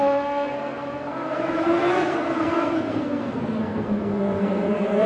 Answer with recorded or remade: remade